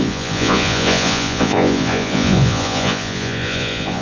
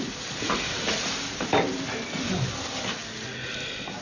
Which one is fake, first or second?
first